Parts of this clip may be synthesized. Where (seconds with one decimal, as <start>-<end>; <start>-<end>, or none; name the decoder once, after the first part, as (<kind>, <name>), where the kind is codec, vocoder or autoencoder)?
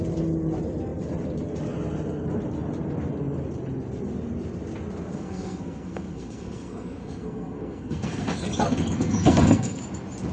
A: 5.1-9.8 (codec, SNAC)